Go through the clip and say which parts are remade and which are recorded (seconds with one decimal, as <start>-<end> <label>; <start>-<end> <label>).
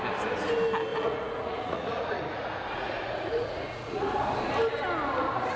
0.0-0.9 recorded; 0.9-4.3 remade; 4.3-5.6 recorded